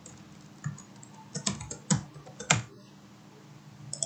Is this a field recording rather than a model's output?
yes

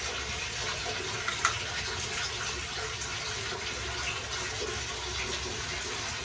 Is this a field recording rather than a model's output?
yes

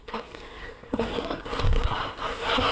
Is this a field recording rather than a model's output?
no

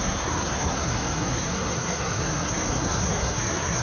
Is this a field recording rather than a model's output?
no